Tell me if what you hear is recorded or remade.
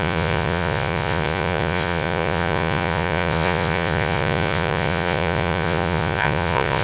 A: remade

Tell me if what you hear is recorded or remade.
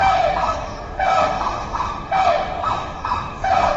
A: remade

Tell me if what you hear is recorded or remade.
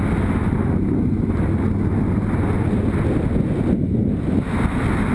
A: recorded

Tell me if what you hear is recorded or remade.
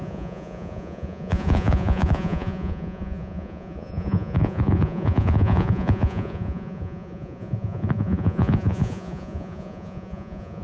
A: remade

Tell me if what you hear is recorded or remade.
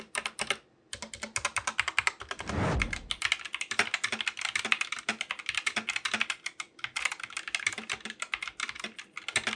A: recorded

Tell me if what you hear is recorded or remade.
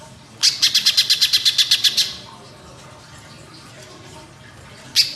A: recorded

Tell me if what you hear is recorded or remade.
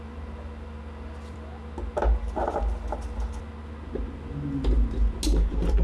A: recorded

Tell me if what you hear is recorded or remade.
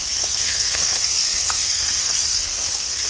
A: remade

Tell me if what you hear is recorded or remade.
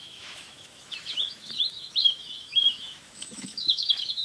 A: remade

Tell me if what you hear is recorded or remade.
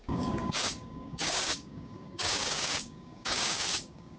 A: remade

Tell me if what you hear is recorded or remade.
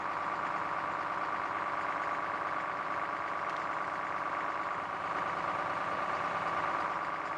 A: recorded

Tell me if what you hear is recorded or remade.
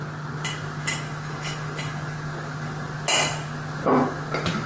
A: recorded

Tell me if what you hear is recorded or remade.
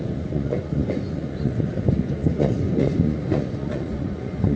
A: remade